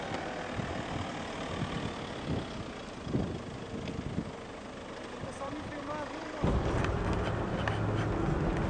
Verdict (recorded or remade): recorded